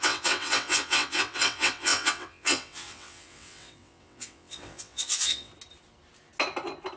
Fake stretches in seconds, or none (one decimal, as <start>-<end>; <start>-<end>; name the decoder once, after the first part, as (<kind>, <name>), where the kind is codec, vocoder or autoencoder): 0.0-5.5 (vocoder, WaveNeXt)